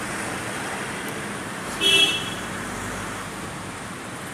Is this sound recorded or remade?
remade